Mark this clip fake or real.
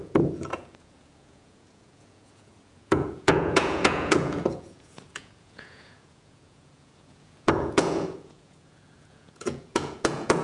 fake